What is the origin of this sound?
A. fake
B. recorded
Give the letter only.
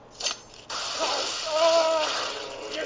B